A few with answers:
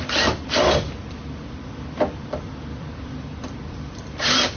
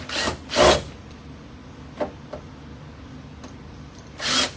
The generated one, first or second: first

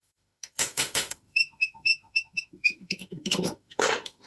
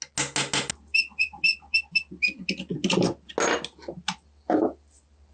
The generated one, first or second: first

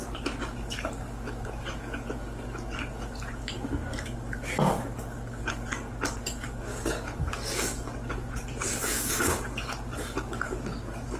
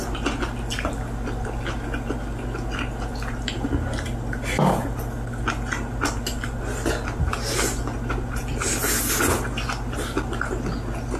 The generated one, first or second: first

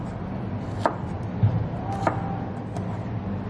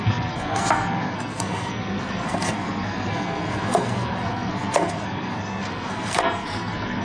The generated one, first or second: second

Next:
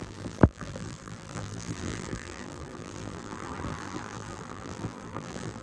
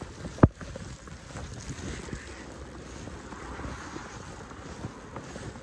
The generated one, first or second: first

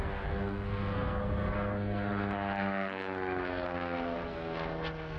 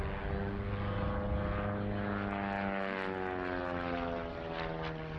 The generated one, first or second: first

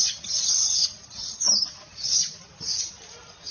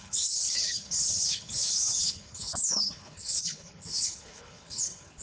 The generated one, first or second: second